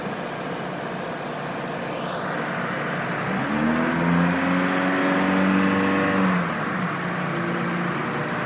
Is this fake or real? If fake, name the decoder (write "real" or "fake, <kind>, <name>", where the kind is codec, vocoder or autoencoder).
real